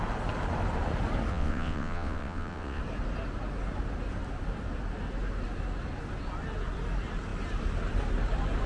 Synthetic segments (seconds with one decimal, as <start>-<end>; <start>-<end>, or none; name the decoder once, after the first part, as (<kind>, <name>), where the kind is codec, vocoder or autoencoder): 1.3-2.8 (vocoder, WaveNeXt)